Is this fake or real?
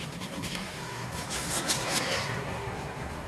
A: fake